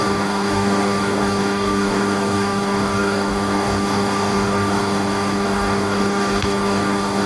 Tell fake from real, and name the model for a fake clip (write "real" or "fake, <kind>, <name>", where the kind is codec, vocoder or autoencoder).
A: fake, codec, DAC